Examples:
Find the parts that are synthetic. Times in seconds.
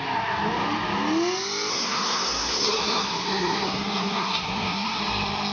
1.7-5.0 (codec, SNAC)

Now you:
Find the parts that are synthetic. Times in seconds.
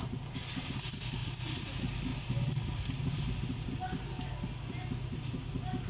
none